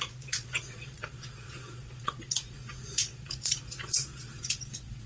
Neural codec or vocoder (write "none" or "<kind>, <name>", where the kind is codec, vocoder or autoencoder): vocoder, Vocos